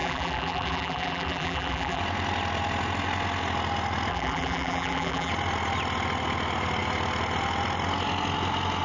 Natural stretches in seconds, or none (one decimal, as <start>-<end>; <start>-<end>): 2.0-4.1; 5.3-8.8